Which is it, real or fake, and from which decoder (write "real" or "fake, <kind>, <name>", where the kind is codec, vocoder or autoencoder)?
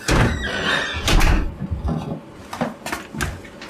real